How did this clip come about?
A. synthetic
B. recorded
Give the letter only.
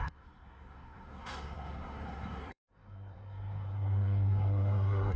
A